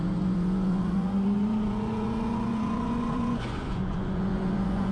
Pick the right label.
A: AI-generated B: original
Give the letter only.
A